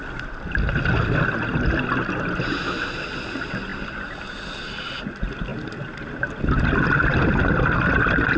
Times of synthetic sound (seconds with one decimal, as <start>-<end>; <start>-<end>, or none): none